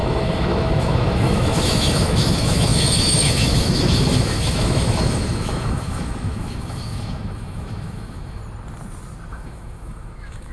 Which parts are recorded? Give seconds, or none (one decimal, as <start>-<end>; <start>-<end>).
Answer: 8.4-9.3